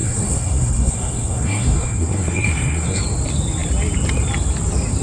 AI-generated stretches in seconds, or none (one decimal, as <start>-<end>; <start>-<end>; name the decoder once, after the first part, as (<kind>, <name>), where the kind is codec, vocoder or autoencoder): 0.0-3.0 (codec, SNAC)

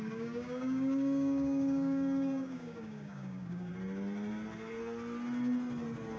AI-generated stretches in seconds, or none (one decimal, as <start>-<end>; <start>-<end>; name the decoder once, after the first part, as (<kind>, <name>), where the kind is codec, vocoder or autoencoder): 0.0-3.7 (codec, DAC)

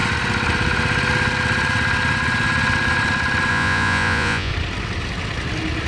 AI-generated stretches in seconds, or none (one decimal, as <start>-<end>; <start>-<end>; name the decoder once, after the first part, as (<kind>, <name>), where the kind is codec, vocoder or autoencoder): 3.5-4.5 (vocoder, Vocos)

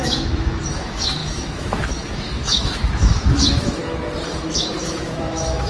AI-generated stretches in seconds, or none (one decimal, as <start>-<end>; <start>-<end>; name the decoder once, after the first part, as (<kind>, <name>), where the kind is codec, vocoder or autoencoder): 0.0-3.8 (autoencoder, DAC-VAE); 4.5-5.7

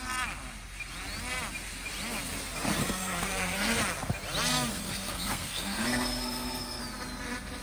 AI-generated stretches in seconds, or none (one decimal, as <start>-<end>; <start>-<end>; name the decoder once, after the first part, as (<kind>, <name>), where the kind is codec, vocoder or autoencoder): 2.8-3.8 (codec, SNAC); 4.5-6.8

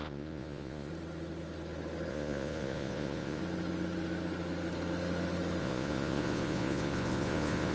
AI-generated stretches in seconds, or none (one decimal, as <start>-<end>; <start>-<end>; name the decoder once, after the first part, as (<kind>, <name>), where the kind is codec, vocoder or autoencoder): 0.0-0.9 (vocoder, Vocos); 2.1-3.4; 5.6-7.7